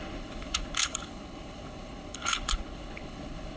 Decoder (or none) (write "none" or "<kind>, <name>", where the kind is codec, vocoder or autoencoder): codec, HILCodec